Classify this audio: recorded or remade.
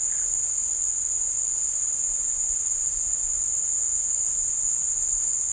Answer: recorded